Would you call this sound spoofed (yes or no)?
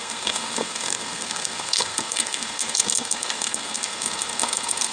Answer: yes